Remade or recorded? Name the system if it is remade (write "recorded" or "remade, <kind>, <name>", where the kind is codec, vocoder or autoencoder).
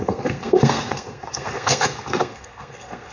remade, codec, SNAC